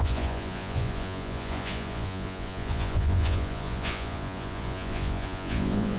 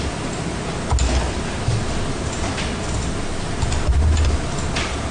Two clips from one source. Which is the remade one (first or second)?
first